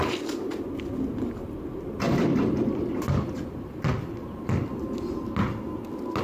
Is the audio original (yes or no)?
yes